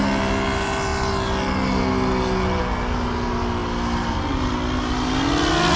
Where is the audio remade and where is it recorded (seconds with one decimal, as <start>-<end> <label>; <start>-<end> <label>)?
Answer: 0.0-5.8 recorded